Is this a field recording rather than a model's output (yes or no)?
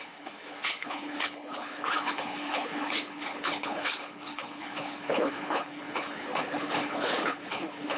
no